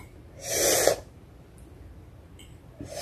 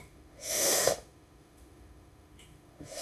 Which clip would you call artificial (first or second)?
second